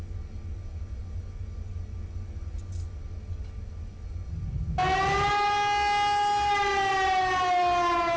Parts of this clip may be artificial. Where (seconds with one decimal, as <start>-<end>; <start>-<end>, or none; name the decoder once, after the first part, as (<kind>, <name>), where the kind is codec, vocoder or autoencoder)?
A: none